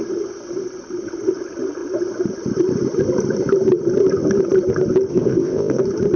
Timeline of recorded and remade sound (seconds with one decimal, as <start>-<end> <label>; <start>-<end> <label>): 0.0-5.1 recorded; 5.1-5.8 remade; 5.8-6.2 recorded